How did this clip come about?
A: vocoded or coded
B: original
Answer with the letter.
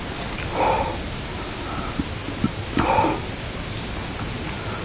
B